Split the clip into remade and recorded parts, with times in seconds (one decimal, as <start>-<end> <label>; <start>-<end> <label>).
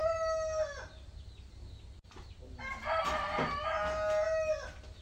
0.0-5.0 recorded